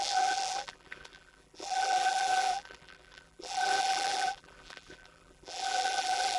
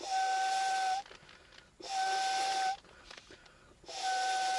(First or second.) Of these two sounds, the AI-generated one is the first